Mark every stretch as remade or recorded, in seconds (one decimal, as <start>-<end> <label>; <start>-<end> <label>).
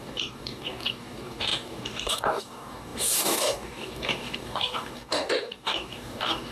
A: 0.0-6.5 remade